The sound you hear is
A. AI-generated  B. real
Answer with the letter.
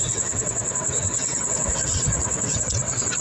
A